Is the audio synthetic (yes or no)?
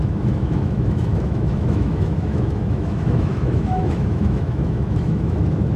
yes